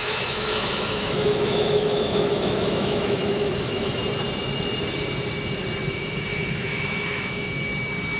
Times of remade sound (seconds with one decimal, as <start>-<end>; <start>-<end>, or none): 0.0-4.0; 5.9-7.7